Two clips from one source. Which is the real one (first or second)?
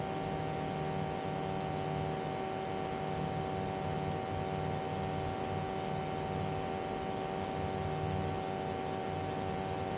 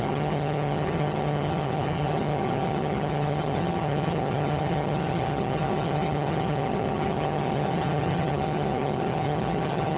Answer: first